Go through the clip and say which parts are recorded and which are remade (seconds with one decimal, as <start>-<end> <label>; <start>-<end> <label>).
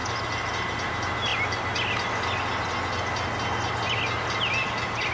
0.0-5.1 recorded